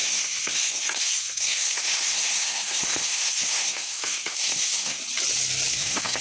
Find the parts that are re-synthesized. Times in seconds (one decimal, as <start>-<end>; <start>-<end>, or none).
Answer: 0.0-5.0; 5.7-6.2